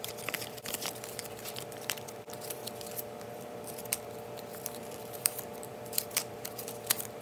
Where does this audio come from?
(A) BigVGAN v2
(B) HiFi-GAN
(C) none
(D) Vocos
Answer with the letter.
A